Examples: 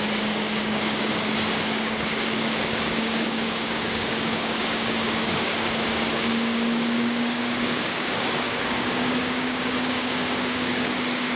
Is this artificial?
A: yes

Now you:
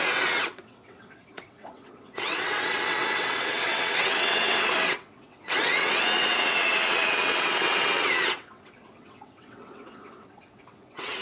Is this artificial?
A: yes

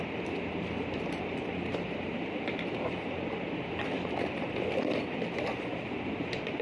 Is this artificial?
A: yes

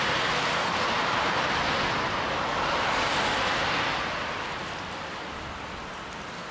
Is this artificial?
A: no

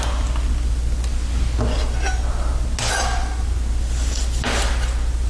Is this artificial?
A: no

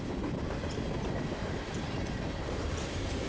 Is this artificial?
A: yes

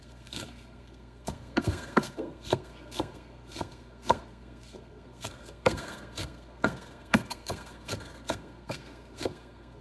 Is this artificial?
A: yes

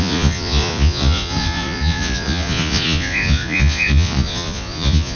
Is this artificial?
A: yes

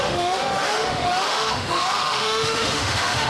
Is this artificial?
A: yes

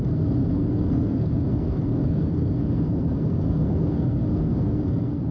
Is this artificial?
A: yes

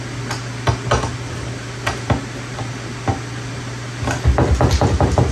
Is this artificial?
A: no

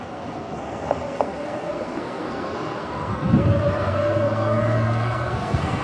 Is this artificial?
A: yes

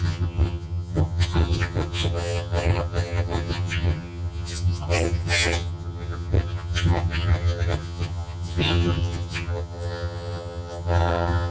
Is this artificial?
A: yes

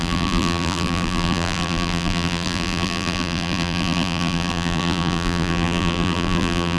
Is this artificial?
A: yes